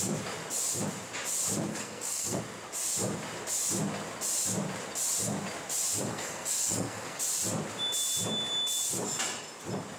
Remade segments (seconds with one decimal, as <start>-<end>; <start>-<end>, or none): 1.7-2.4; 6.1-7.2